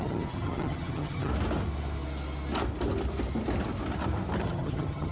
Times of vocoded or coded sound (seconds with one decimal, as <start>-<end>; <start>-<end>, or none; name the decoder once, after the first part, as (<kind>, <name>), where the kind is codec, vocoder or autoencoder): 0.0-1.3 (vocoder, HiFi-GAN); 4.4-5.1